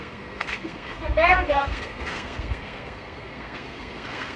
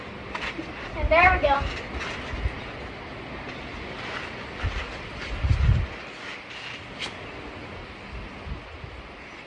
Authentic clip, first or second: second